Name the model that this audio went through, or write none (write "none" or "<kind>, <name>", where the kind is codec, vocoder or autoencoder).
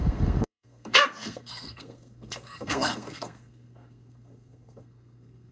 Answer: codec, SNAC